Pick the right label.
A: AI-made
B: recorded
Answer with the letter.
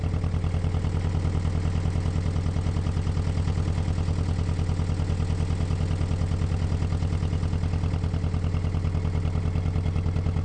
B